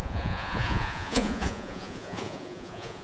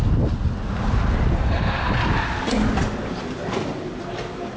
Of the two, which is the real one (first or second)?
second